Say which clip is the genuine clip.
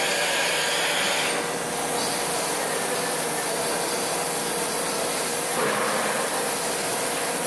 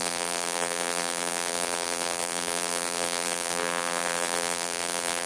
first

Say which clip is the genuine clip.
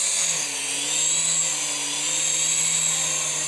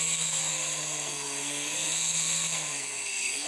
first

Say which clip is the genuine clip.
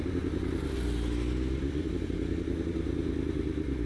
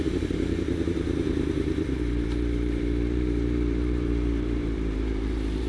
first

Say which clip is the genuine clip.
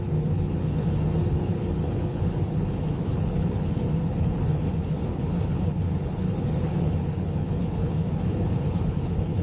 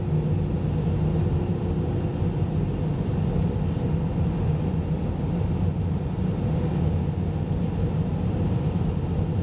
second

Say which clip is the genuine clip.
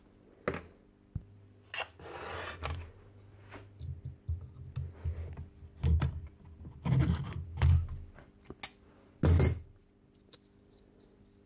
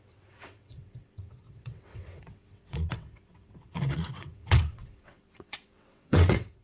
first